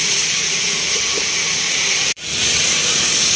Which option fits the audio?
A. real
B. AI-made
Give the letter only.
B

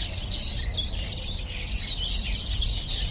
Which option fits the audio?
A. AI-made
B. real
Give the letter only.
B